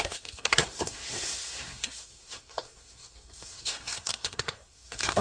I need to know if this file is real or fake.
fake